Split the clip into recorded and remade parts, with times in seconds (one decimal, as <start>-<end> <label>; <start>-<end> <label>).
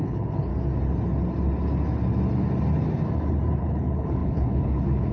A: 0.0-0.5 remade; 0.5-3.6 recorded; 3.6-5.1 remade